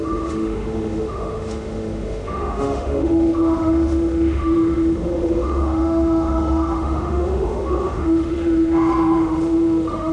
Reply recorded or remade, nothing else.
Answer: remade